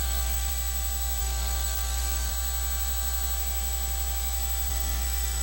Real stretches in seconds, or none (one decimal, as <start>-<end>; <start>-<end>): 0.5-1.2; 2.3-4.7